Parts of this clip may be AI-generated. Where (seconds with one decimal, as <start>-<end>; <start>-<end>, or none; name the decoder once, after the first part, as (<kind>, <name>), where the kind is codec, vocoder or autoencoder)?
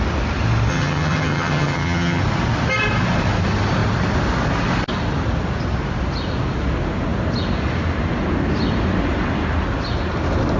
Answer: 0.7-2.2 (vocoder, HiFi-GAN)